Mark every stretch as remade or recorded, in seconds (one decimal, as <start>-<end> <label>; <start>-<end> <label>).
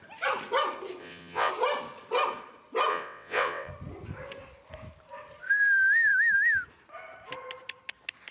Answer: 0.0-1.0 recorded; 1.0-1.5 remade; 1.5-2.9 recorded; 2.9-3.7 remade; 3.7-8.3 recorded